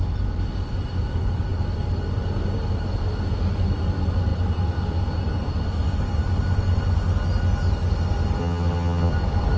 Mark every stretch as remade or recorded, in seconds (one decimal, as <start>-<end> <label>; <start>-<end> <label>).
0.0-8.4 recorded; 8.4-9.1 remade; 9.1-9.6 recorded